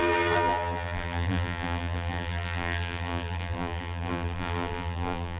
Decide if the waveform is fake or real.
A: fake